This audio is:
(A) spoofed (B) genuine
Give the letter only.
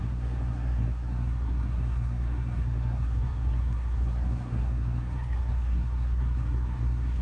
A